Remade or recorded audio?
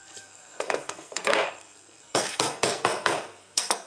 remade